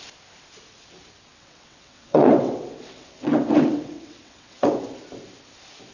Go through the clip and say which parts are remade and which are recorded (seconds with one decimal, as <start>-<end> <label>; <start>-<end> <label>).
0.0-1.3 recorded; 1.3-4.8 remade; 4.8-5.9 recorded